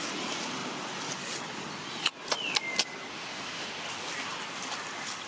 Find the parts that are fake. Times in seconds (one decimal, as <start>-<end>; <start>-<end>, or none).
3.1-3.8